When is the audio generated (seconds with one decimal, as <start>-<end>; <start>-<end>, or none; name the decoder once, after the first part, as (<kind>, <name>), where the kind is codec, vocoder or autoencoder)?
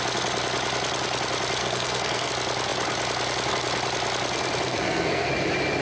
1.6-2.3 (codec, SNAC); 4.7-5.3